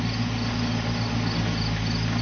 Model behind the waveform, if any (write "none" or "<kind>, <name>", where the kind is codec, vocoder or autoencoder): none